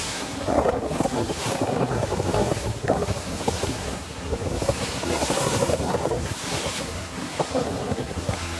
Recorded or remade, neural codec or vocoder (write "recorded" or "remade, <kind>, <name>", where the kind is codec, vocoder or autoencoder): remade, codec, SNAC